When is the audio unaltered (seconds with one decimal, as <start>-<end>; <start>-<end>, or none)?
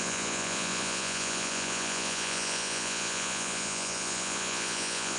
none